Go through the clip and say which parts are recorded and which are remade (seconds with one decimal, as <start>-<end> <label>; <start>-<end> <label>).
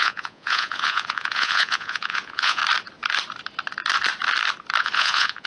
0.0-2.6 remade; 2.6-4.8 recorded; 4.8-5.5 remade